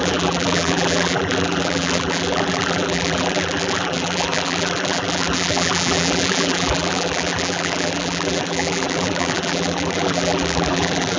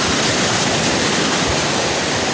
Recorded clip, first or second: second